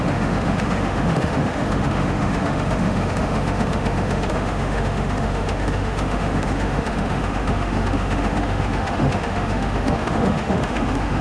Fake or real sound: fake